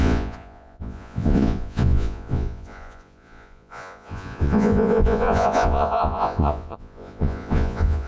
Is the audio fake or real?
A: fake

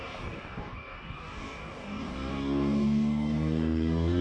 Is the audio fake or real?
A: fake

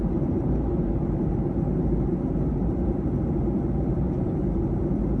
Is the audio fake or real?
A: fake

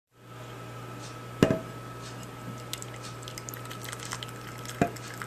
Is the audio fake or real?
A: real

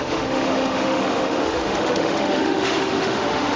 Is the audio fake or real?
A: fake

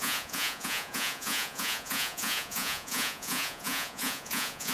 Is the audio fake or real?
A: fake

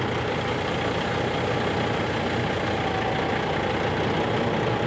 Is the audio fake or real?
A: real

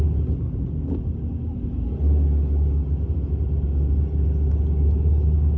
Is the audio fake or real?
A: real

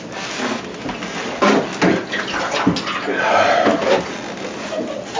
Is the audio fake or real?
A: real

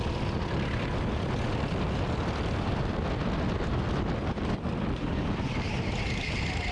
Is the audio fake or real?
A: real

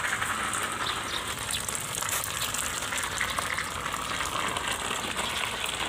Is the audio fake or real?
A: real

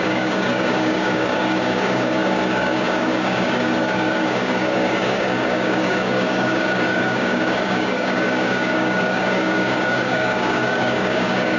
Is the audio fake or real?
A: fake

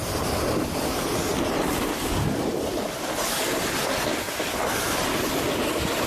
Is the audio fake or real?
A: real